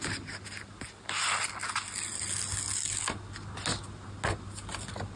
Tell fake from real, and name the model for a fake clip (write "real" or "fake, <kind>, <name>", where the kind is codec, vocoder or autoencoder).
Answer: real